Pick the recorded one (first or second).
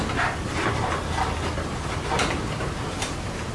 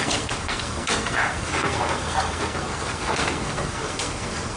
first